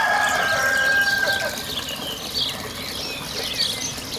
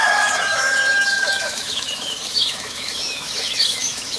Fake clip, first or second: second